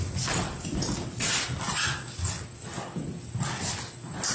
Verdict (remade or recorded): recorded